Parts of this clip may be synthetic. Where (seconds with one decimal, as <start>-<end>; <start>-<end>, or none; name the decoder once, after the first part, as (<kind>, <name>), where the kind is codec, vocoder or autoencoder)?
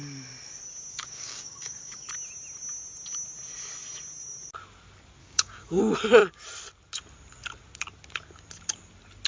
0.9-2.1 (codec, DAC); 5.2-5.8